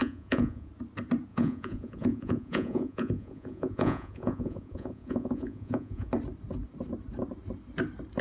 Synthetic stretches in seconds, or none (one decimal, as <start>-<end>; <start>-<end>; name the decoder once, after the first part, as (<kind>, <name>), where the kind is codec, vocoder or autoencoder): 0.0-0.7 (vocoder, Vocos); 1.3-6.1

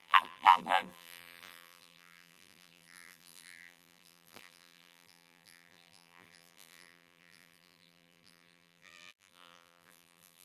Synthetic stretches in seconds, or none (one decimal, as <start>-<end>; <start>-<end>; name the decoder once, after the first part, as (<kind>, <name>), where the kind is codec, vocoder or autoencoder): 0.0-10.4 (vocoder, BigVGAN v2)

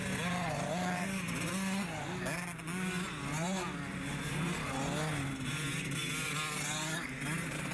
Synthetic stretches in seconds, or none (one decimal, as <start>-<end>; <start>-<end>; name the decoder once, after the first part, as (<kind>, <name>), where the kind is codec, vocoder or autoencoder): none

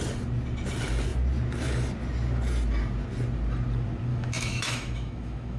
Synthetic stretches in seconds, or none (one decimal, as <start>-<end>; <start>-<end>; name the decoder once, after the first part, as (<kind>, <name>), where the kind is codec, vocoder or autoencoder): 4.1-5.6 (autoencoder, DAC-VAE)

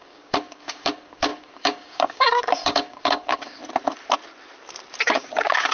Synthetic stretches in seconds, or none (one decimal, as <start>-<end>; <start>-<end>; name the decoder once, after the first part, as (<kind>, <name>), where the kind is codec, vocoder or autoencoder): 0.0-3.6 (codec, DAC); 5.0-5.7

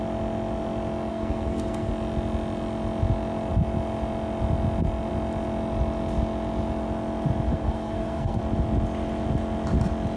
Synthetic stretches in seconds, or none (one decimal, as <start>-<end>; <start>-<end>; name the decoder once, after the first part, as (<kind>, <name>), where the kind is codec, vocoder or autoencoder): 1.1-1.9 (codec, SNAC); 7.5-8.4